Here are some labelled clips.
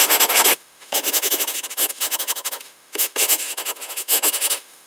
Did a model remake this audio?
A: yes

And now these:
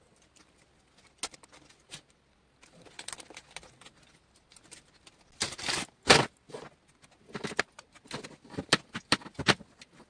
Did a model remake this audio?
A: no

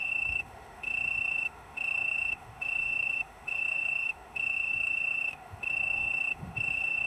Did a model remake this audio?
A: yes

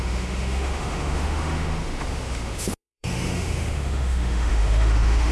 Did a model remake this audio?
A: yes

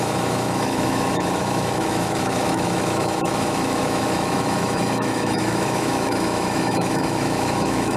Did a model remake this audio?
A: yes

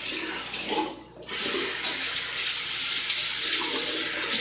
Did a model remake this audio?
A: no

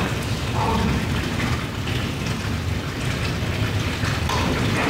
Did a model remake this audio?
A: no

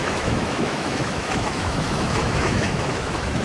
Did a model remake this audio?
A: yes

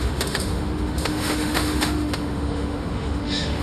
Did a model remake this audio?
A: yes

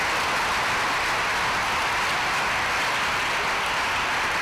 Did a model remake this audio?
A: no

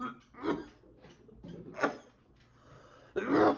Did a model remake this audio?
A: no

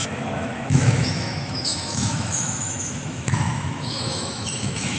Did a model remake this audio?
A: yes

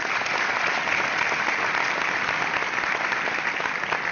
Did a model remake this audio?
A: no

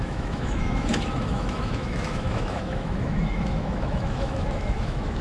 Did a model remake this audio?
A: yes